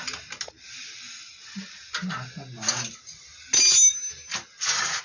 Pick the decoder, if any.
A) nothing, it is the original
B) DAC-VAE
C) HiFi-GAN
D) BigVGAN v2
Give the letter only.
A